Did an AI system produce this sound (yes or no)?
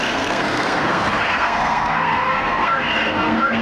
yes